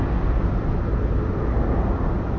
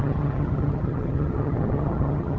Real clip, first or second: first